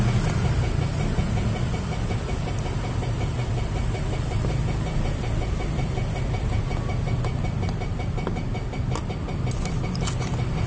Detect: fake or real real